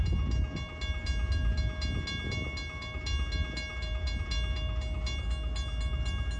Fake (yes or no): no